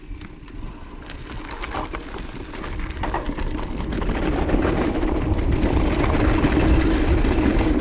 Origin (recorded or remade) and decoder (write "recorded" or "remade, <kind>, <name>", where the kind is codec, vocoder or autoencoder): recorded